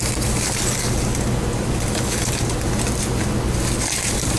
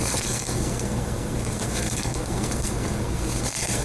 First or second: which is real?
first